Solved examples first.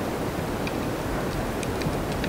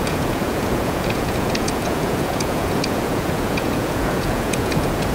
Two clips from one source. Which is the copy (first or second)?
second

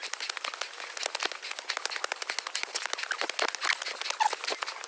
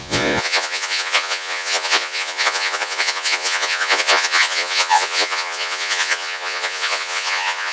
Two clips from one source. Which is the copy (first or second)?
second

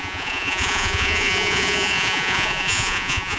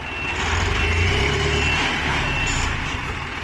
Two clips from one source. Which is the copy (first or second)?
first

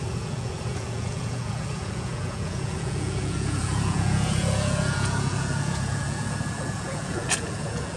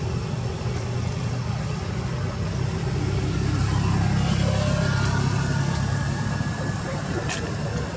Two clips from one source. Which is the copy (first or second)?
first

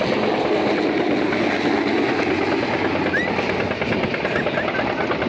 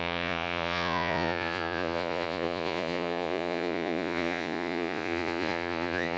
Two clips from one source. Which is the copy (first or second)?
second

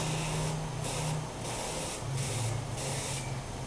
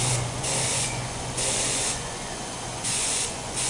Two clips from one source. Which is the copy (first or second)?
second